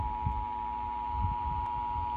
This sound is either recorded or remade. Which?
recorded